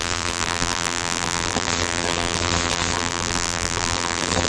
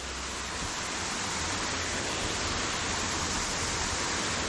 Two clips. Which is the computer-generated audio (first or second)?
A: first